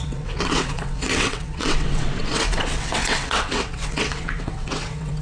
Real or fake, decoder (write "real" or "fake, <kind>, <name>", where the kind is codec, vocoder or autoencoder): fake, vocoder, WaveNeXt